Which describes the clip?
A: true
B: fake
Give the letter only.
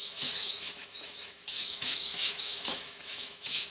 B